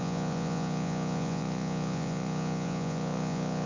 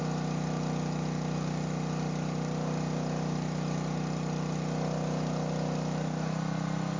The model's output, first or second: first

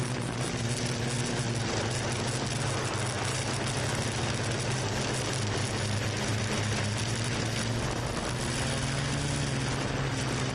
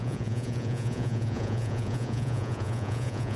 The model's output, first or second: second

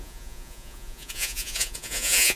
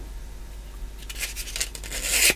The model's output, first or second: first